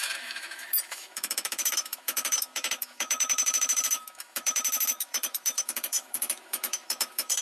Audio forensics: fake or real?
fake